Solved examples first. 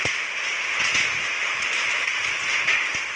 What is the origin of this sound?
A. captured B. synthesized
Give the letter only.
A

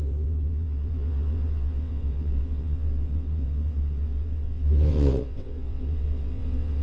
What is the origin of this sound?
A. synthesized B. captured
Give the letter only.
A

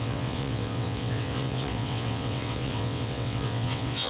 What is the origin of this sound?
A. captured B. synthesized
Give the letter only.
B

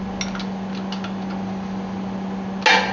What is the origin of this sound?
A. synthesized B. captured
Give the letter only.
B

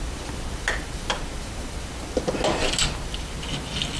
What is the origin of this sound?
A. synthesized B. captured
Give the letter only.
B